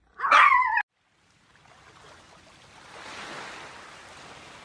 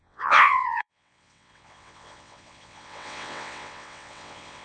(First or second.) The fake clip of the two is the second